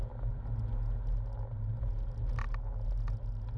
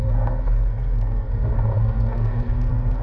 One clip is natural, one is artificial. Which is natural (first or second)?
first